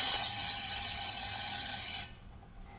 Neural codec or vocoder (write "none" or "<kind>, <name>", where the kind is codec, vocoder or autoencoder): vocoder, WaveNeXt